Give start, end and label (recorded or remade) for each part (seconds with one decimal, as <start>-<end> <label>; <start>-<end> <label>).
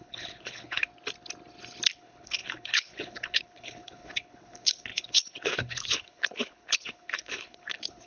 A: 0.0-0.9 remade; 0.9-1.9 recorded; 1.9-8.1 remade